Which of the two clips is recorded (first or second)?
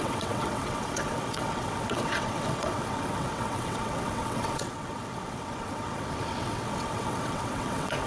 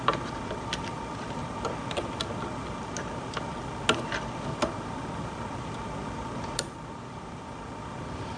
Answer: second